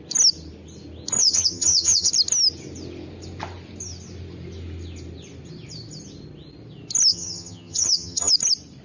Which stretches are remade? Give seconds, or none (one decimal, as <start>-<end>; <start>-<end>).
1.2-2.1; 7.1-8.3